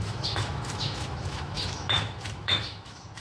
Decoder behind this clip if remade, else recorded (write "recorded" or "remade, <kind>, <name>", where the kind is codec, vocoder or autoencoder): remade, autoencoder, DAC-VAE